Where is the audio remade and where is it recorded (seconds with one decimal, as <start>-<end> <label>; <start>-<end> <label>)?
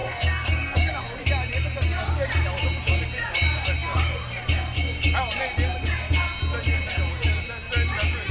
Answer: 0.0-0.9 remade; 0.9-8.3 recorded